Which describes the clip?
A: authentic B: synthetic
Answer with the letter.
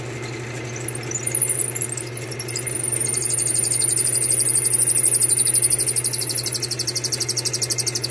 A